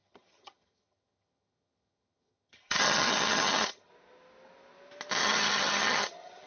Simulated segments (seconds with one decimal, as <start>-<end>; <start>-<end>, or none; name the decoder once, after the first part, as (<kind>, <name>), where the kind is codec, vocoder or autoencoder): 0.0-3.9 (vocoder, HiFi-GAN); 5.2-6.5